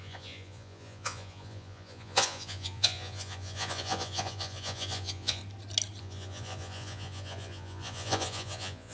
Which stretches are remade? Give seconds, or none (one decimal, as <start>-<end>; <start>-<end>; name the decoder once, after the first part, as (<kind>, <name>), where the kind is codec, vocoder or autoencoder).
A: 0.0-5.4 (vocoder, Vocos); 6.0-8.9